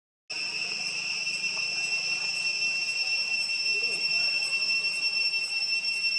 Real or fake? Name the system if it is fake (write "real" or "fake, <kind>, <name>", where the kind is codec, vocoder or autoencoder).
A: real